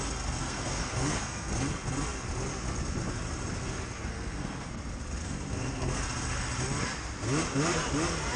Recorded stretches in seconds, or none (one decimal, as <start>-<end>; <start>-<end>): 0.0-0.4; 1.5-4.1; 4.7-5.2; 6.0-8.4